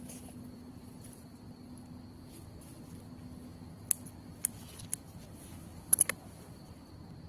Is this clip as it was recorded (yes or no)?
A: yes